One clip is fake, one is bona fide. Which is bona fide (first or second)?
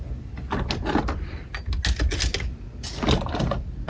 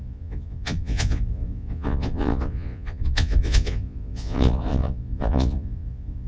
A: first